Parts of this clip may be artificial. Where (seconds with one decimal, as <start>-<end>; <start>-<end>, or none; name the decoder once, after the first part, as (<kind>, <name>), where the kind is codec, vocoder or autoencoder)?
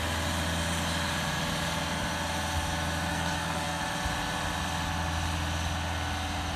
3.1-3.8 (codec, SNAC)